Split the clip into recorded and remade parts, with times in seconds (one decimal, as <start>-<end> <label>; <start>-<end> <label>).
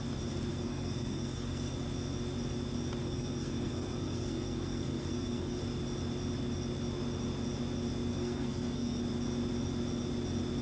0.0-0.5 recorded; 0.5-1.7 remade; 1.7-3.0 recorded; 3.0-5.6 remade; 5.6-8.1 recorded; 8.1-9.0 remade; 9.0-10.6 recorded